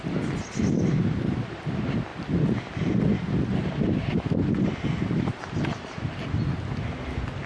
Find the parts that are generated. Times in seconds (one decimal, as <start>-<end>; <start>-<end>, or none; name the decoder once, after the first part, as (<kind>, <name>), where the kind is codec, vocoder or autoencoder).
none